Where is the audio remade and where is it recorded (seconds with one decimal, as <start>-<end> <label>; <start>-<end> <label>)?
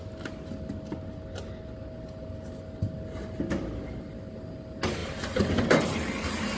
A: 0.0-6.6 recorded